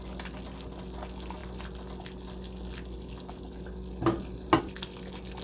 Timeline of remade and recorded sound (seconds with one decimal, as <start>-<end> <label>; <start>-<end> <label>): 0.0-5.4 recorded